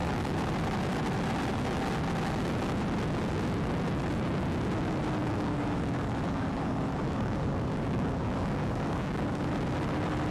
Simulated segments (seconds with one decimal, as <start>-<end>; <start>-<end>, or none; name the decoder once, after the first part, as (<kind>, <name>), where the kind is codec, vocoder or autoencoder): 5.2-9.4 (codec, DAC)